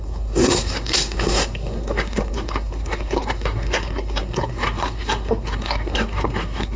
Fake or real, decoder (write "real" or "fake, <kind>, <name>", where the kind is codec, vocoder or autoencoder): fake, codec, SNAC